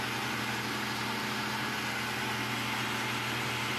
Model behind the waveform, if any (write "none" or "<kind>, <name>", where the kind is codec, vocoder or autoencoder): none